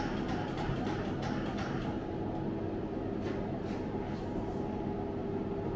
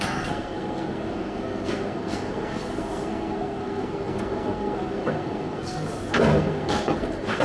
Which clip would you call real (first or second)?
first